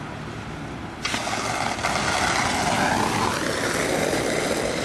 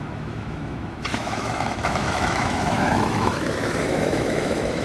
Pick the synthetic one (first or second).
second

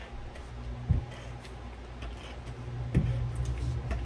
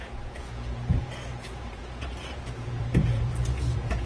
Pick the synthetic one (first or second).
second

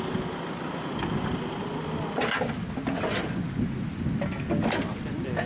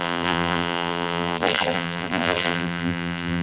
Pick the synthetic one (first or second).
second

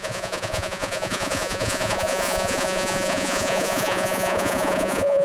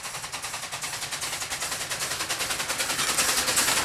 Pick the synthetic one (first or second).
first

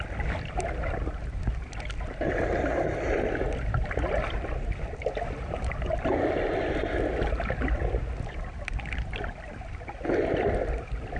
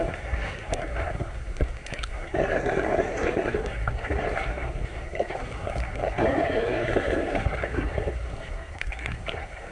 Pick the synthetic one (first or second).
second